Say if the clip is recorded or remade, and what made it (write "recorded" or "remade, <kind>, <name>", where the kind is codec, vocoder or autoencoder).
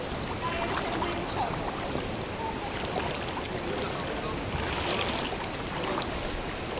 recorded